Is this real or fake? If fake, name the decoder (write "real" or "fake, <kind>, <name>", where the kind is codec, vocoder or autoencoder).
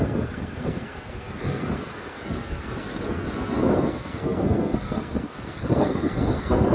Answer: fake, codec, SNAC